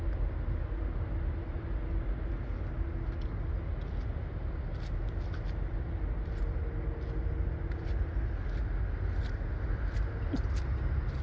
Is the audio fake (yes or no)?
no